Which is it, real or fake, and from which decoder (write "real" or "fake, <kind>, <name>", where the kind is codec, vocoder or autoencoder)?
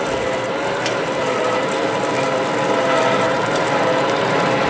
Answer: real